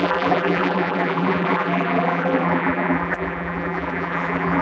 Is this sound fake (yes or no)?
yes